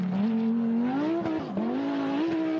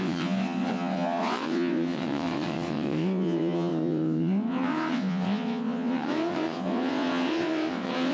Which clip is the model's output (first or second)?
second